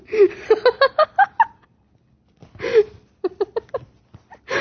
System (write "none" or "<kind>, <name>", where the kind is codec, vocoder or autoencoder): none